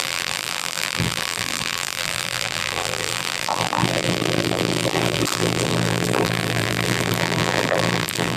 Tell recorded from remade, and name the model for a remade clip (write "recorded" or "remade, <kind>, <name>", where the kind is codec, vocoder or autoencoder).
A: remade, vocoder, BigVGAN v2